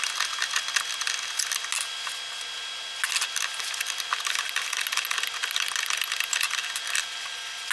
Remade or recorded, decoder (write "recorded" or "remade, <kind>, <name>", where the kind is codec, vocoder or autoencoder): recorded